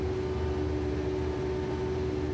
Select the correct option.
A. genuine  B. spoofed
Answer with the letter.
A